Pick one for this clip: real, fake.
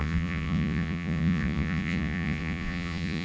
fake